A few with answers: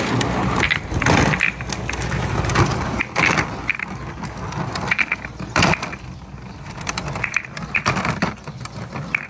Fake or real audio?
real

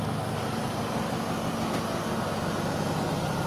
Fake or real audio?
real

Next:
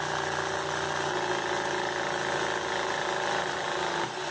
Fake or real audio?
real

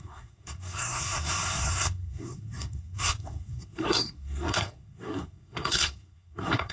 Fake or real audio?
fake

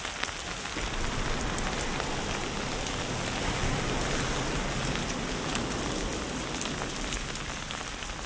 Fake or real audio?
real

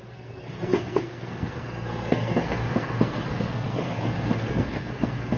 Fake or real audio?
fake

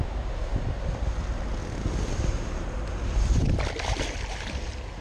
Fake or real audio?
real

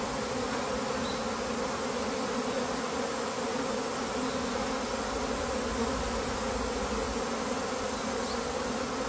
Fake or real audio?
real